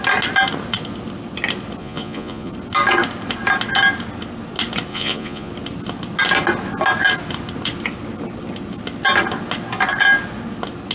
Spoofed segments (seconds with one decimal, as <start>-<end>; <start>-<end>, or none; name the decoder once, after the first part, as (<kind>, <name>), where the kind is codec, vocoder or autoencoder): 1.8-2.5 (vocoder, Vocos); 4.9-5.5